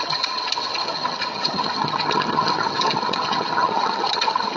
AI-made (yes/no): yes